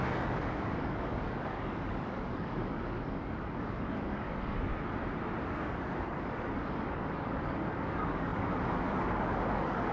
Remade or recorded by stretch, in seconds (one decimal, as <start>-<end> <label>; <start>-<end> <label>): 0.0-4.7 remade; 4.7-5.4 recorded; 5.4-9.9 remade